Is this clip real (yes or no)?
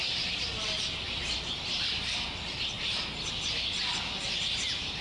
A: yes